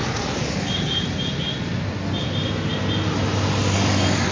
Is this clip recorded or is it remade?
recorded